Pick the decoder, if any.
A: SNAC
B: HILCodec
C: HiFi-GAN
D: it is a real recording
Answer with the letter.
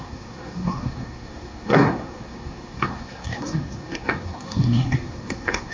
A